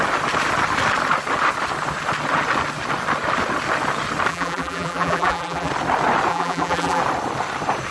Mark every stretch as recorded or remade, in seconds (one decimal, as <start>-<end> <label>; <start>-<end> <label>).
0.0-4.3 recorded; 4.3-5.7 remade; 5.7-6.3 recorded; 6.3-7.0 remade; 7.0-7.9 recorded